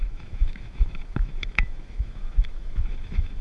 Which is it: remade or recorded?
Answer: remade